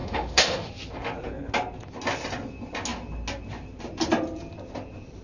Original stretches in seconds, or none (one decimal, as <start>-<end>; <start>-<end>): 0.7-5.2